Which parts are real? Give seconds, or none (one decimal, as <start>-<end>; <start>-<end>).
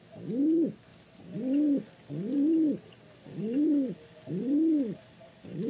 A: 0.0-5.7